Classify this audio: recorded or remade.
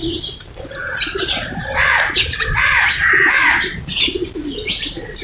remade